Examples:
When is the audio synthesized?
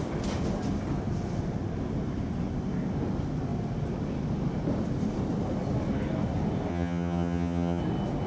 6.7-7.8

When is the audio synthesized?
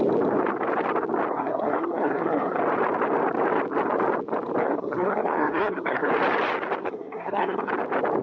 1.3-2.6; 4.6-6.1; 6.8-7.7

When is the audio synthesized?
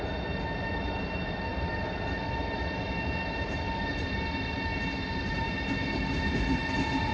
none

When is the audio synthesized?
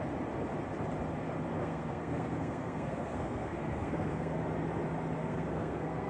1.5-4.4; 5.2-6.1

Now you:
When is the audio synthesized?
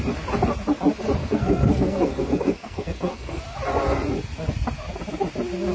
1.2-3.4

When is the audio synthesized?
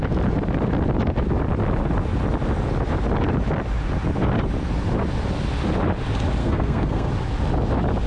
6.4-7.1